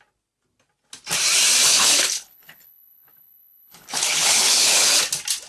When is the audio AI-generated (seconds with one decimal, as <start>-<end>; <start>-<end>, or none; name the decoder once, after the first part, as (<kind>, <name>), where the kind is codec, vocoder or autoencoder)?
1.7-5.0 (codec, HILCodec)